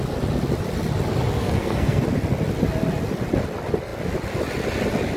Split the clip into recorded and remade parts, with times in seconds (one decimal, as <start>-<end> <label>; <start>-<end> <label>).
0.0-1.4 recorded; 1.4-2.0 remade; 2.0-5.2 recorded

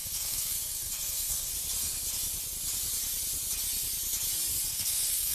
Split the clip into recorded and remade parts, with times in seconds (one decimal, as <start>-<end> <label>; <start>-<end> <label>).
0.0-1.5 remade; 1.5-4.7 recorded; 4.7-5.3 remade

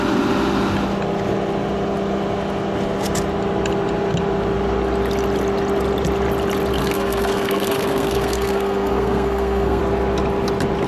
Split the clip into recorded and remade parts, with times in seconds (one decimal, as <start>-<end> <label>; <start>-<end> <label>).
0.0-6.8 recorded; 6.8-9.8 remade; 9.8-10.9 recorded

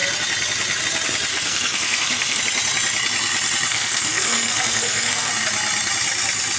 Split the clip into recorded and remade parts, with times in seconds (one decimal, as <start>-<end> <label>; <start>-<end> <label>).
0.0-1.3 recorded; 1.3-2.4 remade; 2.4-3.7 recorded; 3.7-5.3 remade; 5.3-6.6 recorded

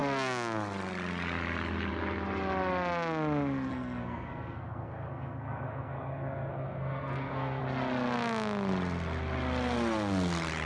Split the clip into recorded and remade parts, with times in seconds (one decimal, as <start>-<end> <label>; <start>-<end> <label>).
0.0-3.7 recorded; 3.7-7.6 remade; 7.6-10.7 recorded

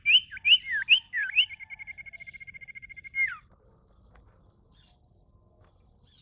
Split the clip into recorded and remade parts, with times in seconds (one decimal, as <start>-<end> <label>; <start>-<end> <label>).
0.0-6.2 recorded

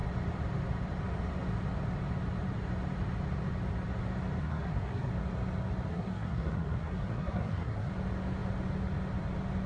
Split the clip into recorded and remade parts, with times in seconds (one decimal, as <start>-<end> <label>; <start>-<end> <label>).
0.0-4.4 recorded; 4.4-5.1 remade; 5.1-5.9 recorded; 5.9-7.9 remade; 7.9-9.7 recorded